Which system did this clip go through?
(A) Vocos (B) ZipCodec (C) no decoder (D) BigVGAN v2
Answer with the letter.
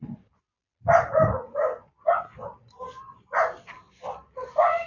C